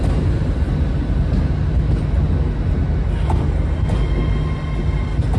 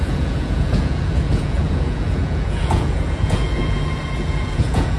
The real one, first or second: first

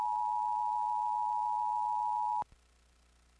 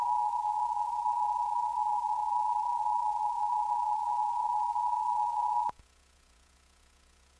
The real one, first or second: first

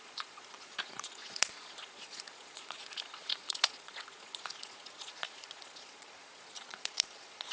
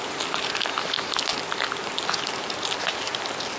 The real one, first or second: second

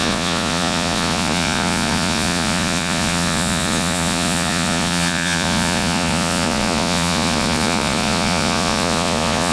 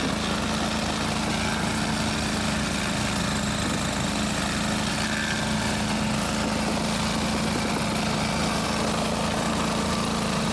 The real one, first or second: second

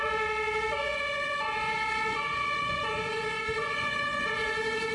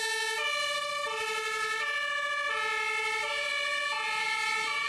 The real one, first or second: second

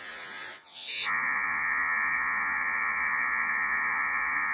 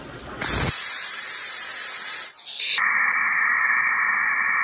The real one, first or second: second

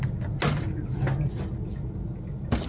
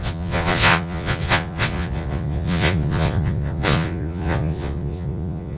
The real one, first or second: first